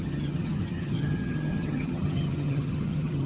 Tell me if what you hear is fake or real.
fake